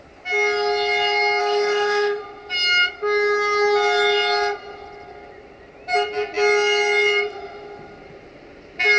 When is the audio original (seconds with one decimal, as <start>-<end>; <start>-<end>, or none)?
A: 0.0-1.4; 2.2-9.0